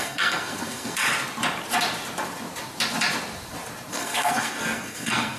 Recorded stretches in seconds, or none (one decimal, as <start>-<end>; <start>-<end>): 1.0-3.9

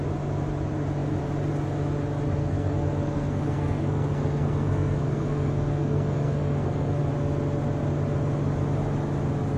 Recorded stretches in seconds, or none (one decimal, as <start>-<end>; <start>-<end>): 0.0-2.4; 7.0-9.6

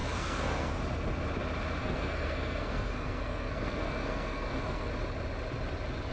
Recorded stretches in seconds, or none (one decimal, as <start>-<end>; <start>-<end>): 0.8-1.8; 4.9-6.1

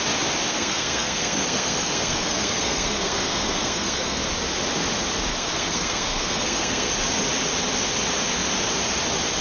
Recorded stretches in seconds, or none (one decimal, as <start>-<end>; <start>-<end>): 0.0-0.5; 4.2-5.3; 6.9-9.4

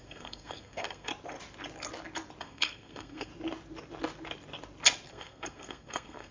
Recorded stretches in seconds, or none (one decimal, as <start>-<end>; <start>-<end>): 1.1-2.4; 3.3-5.1

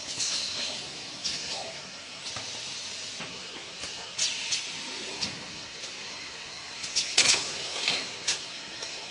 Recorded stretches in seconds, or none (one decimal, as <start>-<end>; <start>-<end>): 2.2-3.3; 4.2-5.1

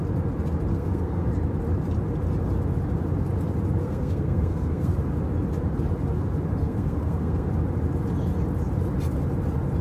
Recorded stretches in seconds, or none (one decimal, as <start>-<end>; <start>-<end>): 0.0-0.7; 1.3-3.8; 4.9-6.6; 7.5-9.8

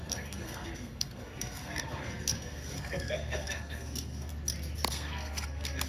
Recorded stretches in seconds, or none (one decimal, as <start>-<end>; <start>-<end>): 4.3-4.9